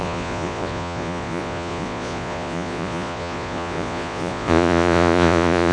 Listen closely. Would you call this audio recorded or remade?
remade